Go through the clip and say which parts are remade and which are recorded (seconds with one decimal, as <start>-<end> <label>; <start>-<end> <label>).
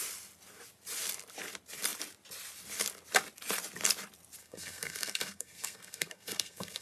0.0-4.4 recorded; 4.4-6.8 remade